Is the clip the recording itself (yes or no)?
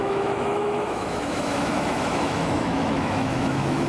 no